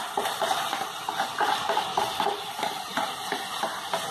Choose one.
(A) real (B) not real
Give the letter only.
A